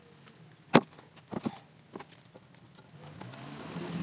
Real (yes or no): yes